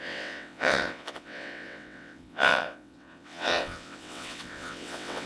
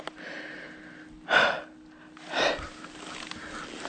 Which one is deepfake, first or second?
first